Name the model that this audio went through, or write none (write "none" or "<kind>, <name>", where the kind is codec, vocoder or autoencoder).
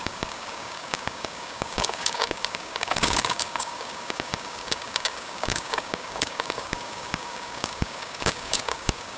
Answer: codec, DAC